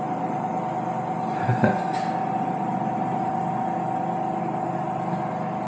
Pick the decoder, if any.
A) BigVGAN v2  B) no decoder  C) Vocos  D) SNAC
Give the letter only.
B